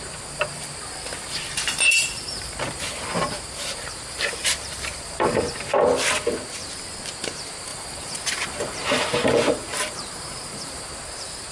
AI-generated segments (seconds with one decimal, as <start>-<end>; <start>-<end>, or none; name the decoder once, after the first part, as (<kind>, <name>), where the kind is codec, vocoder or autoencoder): 1.1-5.7 (vocoder, BigVGAN v2); 7.7-11.0